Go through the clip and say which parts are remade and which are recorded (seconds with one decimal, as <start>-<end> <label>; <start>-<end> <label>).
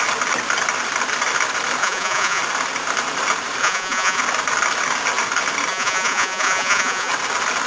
0.0-1.8 recorded; 1.8-2.4 remade; 2.4-3.6 recorded; 3.6-4.2 remade; 4.2-5.7 recorded; 5.7-7.1 remade; 7.1-7.7 recorded